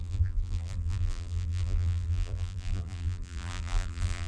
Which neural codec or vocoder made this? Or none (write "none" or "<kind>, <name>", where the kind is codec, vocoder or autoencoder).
vocoder, BigVGAN v2